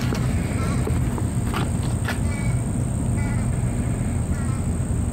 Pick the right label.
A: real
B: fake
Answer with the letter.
A